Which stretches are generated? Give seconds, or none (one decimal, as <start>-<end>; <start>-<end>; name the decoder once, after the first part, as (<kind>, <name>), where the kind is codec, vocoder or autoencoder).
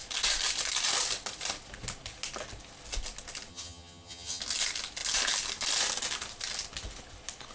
3.5-4.4 (vocoder, HiFi-GAN)